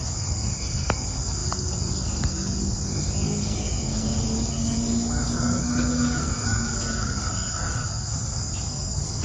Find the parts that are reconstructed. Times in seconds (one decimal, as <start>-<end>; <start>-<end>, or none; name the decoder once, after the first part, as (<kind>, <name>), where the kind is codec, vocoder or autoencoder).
0.0-9.2 (codec, SNAC)